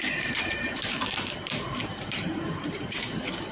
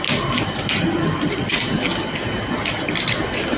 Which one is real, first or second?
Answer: second